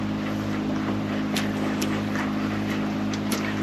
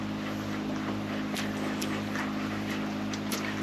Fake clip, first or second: first